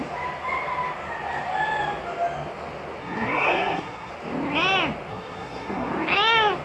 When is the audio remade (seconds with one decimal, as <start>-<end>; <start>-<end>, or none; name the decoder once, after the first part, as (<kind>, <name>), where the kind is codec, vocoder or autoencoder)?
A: 3.0-4.1 (codec, SNAC); 5.1-5.9